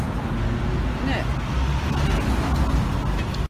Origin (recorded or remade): recorded